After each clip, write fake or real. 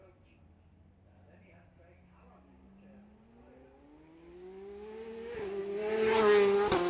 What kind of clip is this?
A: real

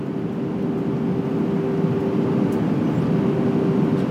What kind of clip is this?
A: real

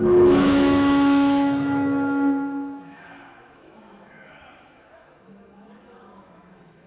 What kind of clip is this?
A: fake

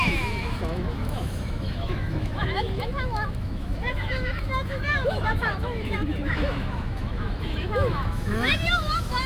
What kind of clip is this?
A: fake